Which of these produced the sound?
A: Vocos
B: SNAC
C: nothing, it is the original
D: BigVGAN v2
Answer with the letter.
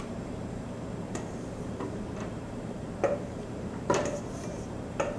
D